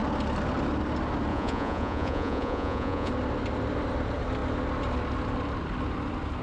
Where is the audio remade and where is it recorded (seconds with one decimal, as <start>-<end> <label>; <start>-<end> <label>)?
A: 0.0-1.3 recorded; 1.3-3.1 remade; 3.1-6.4 recorded

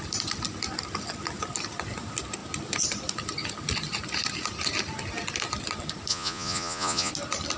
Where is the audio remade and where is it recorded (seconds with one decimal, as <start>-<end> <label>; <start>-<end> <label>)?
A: 0.0-6.1 recorded; 6.1-7.1 remade; 7.1-7.6 recorded

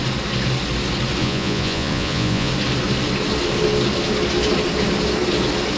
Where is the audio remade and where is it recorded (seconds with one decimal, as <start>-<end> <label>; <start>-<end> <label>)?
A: 0.0-1.2 recorded; 1.2-2.5 remade; 2.5-5.8 recorded

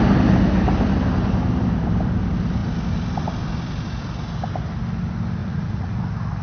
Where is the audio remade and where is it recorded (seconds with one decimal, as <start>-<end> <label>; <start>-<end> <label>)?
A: 0.0-5.4 recorded; 5.4-6.0 remade; 6.0-6.4 recorded

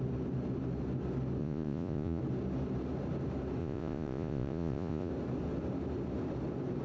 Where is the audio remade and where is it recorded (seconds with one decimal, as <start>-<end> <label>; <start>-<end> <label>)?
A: 0.0-1.4 recorded; 1.4-2.2 remade; 2.2-3.6 recorded; 3.6-5.1 remade; 5.1-6.8 recorded

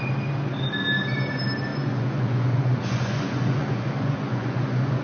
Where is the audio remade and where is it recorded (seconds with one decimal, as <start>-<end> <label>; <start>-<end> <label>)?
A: 0.0-1.7 recorded; 1.7-5.0 remade

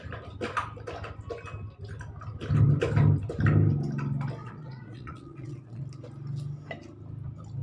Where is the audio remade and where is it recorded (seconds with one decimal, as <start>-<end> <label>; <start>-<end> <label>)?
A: 0.0-4.4 recorded; 4.4-5.8 remade; 5.8-7.6 recorded